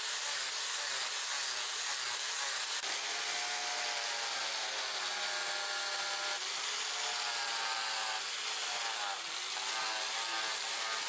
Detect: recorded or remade recorded